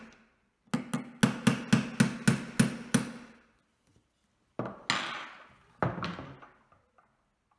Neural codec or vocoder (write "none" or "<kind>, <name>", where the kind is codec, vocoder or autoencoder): none